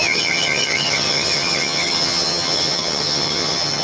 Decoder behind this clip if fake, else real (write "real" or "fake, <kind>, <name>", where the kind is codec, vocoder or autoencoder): fake, vocoder, HiFi-GAN